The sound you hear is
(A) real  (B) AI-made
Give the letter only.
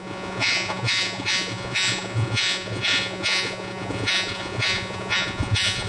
B